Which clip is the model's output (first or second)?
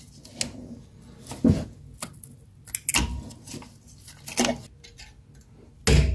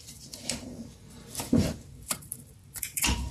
second